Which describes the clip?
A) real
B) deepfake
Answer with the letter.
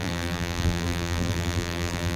B